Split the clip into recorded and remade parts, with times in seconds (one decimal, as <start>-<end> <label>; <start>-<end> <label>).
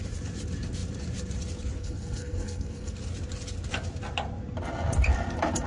0.0-1.8 recorded; 1.8-2.9 remade; 2.9-5.7 recorded